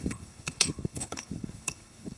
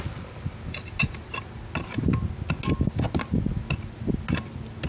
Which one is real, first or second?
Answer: second